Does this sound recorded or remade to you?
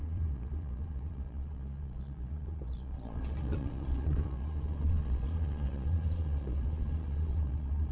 remade